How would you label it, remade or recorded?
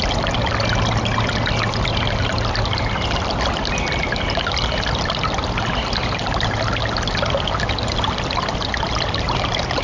recorded